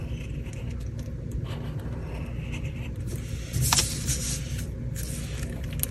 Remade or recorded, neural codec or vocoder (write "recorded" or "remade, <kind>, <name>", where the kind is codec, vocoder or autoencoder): recorded